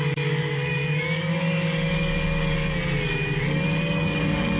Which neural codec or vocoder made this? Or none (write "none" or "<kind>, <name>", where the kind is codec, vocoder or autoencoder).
codec, DAC